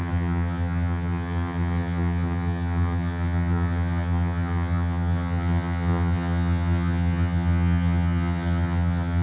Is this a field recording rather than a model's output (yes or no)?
no